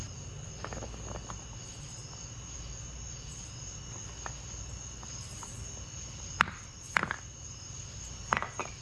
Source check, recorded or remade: recorded